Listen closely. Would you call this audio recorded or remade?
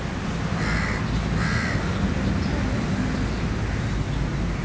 recorded